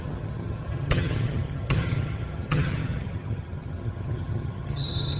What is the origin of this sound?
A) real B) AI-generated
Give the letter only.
B